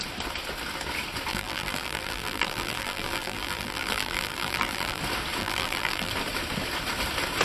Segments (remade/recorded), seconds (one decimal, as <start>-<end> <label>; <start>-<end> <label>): 0.0-1.3 recorded; 1.3-5.0 remade; 5.0-5.4 recorded; 5.4-6.1 remade; 6.1-7.4 recorded

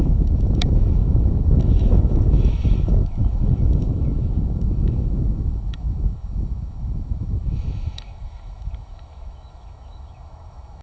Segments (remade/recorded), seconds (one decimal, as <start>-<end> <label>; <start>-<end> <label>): 0.0-10.8 remade

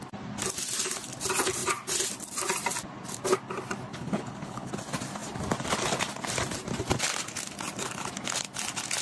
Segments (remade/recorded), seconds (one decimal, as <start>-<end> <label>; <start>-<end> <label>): 0.0-3.9 recorded; 3.9-4.7 remade; 4.7-9.0 recorded